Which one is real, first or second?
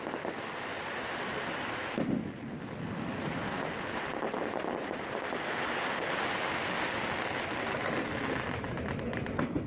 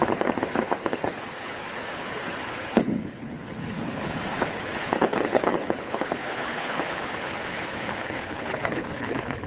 first